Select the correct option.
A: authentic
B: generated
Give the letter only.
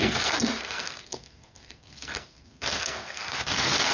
B